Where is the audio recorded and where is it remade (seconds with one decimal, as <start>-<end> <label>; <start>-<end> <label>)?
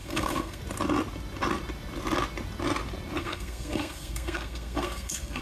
0.0-0.6 remade; 0.6-3.2 recorded; 3.2-5.4 remade